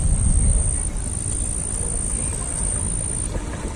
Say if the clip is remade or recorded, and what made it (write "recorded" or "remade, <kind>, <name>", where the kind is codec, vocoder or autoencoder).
recorded